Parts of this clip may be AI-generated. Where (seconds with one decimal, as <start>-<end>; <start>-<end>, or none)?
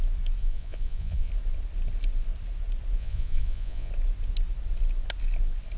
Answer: 0.4-1.3; 3.0-3.9